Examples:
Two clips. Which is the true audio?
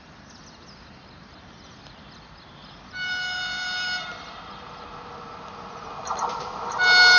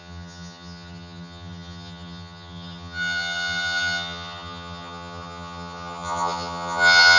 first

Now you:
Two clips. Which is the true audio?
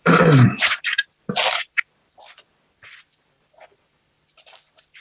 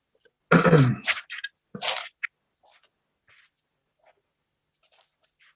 second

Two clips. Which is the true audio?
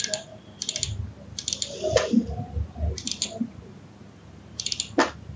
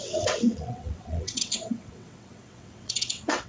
first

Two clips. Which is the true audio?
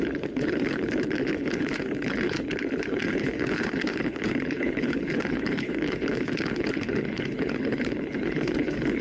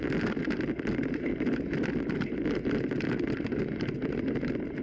second